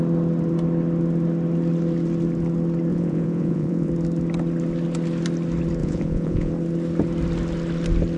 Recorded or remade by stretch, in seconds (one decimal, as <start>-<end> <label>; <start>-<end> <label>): 0.0-2.9 recorded; 2.9-3.9 remade; 3.9-5.8 recorded; 5.8-6.5 remade; 6.5-8.2 recorded